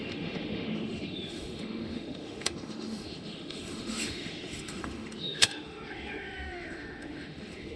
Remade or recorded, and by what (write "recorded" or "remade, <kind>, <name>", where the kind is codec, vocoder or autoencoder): remade, autoencoder, DAC-VAE